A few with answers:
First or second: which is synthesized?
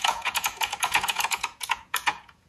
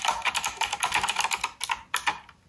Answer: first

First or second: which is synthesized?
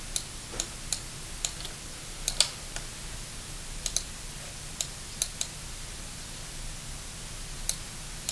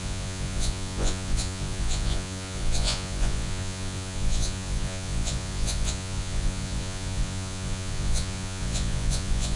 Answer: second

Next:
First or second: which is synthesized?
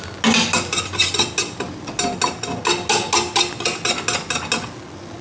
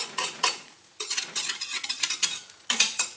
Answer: second